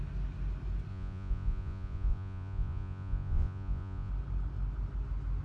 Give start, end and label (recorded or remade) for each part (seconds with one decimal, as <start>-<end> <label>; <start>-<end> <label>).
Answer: 0.0-0.9 recorded; 0.9-4.1 remade; 4.1-5.4 recorded